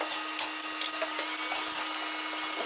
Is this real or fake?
real